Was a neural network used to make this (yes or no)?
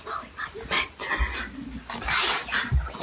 no